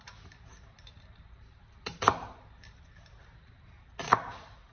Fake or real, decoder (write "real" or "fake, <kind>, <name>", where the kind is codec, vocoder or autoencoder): fake, vocoder, BigVGAN v2